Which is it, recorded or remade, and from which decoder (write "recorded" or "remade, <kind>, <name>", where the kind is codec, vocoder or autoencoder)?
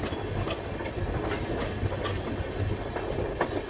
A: recorded